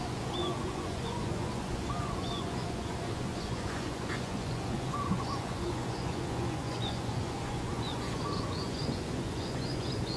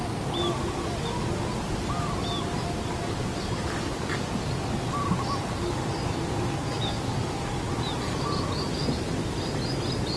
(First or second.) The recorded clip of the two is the second